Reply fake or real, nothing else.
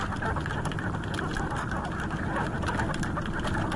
real